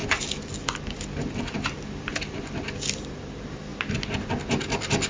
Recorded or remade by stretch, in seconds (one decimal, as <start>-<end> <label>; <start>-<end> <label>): 0.0-5.1 recorded